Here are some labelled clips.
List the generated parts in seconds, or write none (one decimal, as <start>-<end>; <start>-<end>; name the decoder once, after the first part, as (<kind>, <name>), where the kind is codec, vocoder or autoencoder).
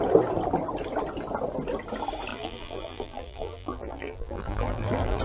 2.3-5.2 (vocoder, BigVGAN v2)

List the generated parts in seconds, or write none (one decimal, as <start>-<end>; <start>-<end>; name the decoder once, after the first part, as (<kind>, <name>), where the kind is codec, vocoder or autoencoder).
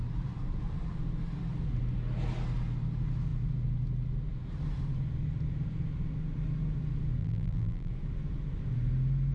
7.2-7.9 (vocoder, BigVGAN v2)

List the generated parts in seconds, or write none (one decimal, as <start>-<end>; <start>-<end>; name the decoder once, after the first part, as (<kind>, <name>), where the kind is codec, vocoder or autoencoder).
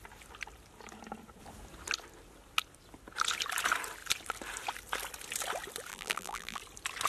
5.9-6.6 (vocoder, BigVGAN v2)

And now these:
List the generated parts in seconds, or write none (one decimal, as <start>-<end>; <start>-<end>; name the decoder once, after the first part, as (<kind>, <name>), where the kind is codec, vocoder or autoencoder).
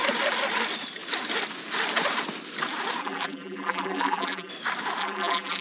3.0-4.5 (vocoder, BigVGAN v2); 5.0-5.6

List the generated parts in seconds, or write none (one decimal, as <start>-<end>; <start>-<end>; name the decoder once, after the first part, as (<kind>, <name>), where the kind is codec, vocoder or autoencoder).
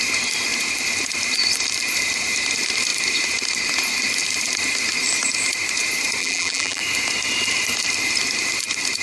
6.2-6.8 (vocoder, BigVGAN v2)